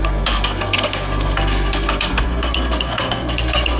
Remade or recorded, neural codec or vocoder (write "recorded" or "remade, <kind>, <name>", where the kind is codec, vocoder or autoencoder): remade, codec, SNAC